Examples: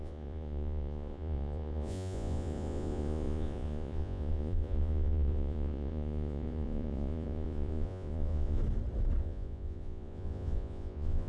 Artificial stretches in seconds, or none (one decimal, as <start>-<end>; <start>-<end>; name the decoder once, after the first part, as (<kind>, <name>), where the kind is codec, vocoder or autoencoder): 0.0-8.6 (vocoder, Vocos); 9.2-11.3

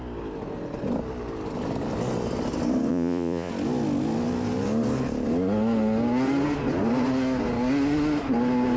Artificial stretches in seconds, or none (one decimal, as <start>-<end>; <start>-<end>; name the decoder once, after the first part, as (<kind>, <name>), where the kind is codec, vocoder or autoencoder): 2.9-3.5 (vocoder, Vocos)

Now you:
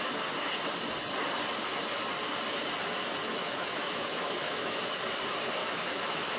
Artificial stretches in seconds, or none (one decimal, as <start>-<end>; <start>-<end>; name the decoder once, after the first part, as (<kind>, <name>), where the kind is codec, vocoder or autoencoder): 3.3-4.9 (autoencoder, DAC-VAE); 5.6-6.4